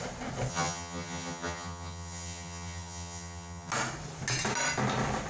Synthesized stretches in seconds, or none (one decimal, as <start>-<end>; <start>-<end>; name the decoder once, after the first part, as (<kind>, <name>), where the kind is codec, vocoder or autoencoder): 0.5-3.7 (vocoder, HiFi-GAN)